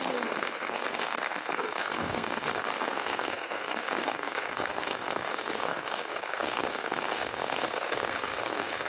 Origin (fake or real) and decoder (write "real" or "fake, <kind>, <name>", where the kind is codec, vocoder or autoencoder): fake, codec, SNAC